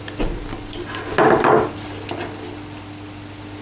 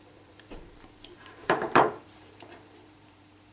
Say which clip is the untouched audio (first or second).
first